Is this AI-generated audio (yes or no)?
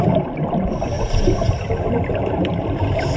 yes